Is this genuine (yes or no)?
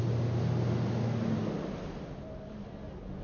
yes